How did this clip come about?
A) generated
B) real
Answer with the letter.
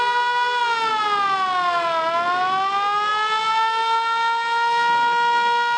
B